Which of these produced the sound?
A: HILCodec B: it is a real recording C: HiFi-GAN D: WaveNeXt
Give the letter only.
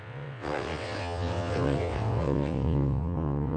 D